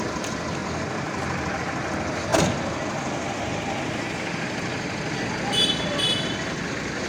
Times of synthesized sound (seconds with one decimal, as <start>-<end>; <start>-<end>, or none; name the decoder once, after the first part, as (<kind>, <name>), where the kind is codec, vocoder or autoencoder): none